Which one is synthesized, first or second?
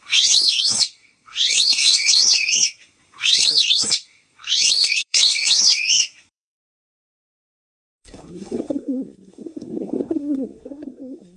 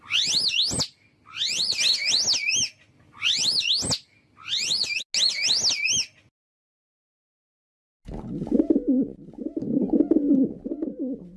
first